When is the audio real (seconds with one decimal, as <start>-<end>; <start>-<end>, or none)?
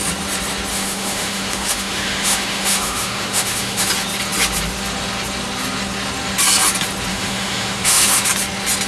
0.0-0.7; 3.9-7.1; 8.3-8.9